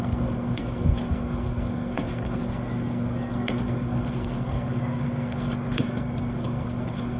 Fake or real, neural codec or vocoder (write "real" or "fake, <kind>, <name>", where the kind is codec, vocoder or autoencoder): fake, codec, SNAC